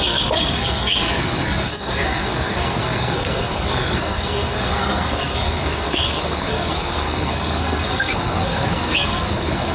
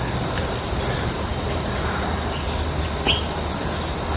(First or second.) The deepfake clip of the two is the first